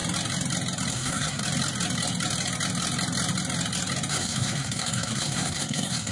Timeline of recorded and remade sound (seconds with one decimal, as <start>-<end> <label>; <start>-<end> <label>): 0.0-0.9 recorded; 0.9-1.4 remade; 1.4-4.1 recorded; 4.1-6.1 remade